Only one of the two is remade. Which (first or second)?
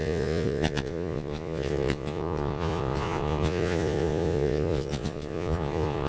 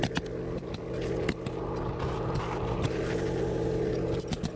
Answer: first